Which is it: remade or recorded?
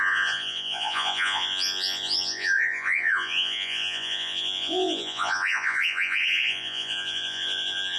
remade